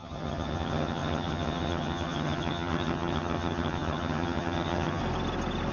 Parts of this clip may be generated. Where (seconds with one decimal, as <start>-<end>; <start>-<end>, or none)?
0.0-5.0